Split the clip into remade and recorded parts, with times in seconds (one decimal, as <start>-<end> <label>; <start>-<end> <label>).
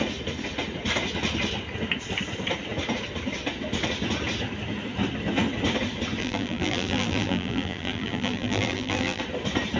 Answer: 0.0-6.2 recorded; 6.2-9.2 remade; 9.2-9.8 recorded